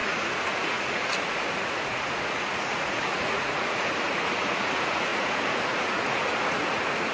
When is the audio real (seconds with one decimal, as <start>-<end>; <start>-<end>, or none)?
none